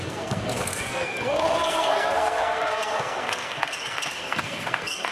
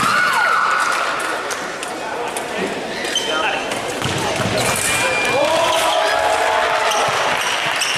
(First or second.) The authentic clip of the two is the second